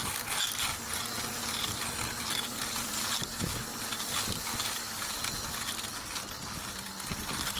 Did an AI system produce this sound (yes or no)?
no